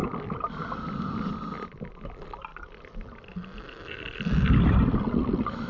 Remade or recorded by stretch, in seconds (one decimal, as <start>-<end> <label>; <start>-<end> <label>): 0.0-5.7 recorded